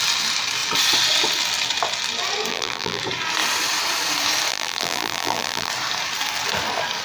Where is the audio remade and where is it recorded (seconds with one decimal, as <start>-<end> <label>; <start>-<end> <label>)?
0.0-2.5 recorded; 2.5-3.0 remade; 3.0-4.5 recorded; 4.5-5.7 remade; 5.7-7.0 recorded